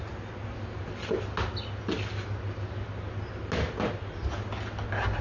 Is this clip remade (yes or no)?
no